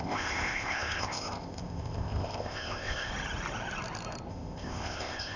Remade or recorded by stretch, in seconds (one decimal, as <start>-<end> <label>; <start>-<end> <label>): 0.0-3.1 remade; 3.1-4.3 recorded; 4.3-5.4 remade